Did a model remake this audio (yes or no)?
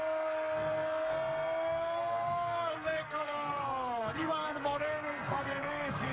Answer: yes